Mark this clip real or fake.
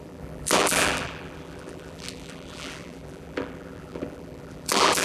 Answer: fake